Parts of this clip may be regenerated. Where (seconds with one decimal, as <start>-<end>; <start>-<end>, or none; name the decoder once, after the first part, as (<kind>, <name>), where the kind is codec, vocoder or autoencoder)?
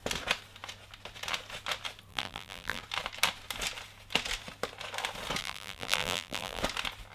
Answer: 2.1-2.8 (vocoder, BigVGAN v2); 5.4-6.6